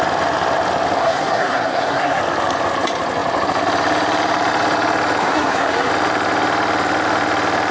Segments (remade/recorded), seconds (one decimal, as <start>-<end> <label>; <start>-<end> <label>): 0.0-1.0 recorded; 1.0-2.2 remade; 2.2-5.2 recorded; 5.2-5.9 remade; 5.9-7.7 recorded